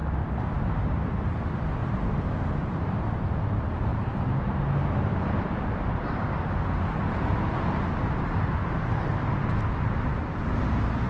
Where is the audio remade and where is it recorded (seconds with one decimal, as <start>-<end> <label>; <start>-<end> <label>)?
0.0-1.8 recorded; 1.8-2.9 remade; 2.9-3.9 recorded; 3.9-4.6 remade; 4.6-11.1 recorded